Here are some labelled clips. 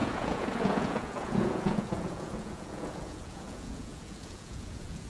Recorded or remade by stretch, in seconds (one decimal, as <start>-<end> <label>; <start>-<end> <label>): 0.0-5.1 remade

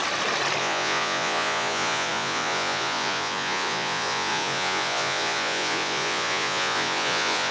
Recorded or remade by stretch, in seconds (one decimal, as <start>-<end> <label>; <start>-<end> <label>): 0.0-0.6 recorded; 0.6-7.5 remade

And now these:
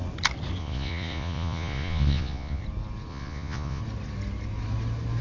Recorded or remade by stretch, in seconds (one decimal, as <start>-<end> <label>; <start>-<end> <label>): 0.0-0.6 recorded; 0.6-2.6 remade; 2.6-3.1 recorded; 3.1-3.8 remade; 3.8-5.2 recorded

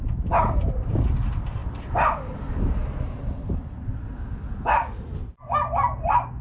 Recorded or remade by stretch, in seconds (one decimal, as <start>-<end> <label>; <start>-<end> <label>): 0.0-6.4 recorded

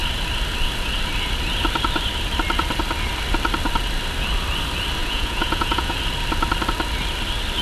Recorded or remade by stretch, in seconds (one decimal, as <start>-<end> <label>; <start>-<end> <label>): 0.0-5.0 recorded; 5.0-6.0 remade; 6.0-7.6 recorded

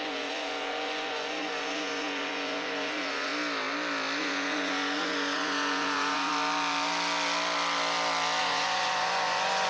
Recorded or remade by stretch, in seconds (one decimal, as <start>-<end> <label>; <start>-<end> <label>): 0.0-3.3 remade; 3.3-4.2 recorded; 4.2-6.3 remade; 6.3-8.4 recorded; 8.4-9.7 remade

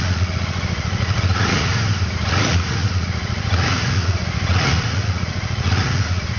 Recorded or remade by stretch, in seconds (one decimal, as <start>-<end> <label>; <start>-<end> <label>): 0.0-1.7 remade; 1.7-2.3 recorded; 2.3-6.4 remade

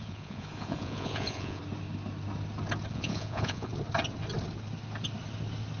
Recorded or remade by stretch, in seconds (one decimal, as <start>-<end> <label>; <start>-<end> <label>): 0.0-1.6 remade; 1.6-2.9 recorded; 2.9-3.7 remade; 3.7-5.8 recorded